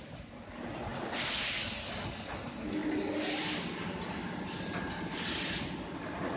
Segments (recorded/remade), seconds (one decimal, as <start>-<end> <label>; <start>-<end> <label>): 0.0-6.4 recorded